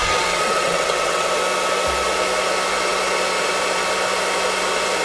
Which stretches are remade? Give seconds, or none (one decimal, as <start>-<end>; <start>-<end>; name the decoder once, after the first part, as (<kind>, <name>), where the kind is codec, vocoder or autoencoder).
0.0-1.3 (vocoder, WaveNeXt)